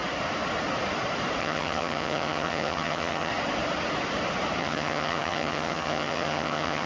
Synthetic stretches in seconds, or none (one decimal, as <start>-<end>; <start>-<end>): 1.4-3.3; 4.6-6.9